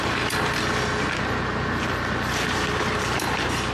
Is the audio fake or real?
real